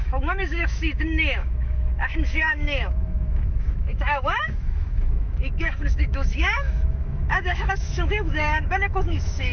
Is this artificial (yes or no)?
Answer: yes